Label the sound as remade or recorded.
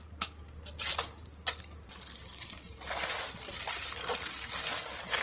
remade